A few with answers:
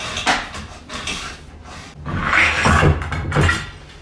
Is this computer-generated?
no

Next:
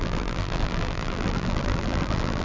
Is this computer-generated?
yes